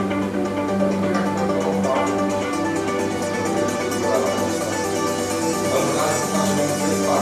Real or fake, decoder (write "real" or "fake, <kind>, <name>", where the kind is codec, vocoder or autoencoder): real